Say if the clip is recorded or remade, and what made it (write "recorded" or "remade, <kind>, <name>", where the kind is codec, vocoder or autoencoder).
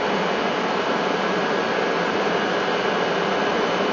recorded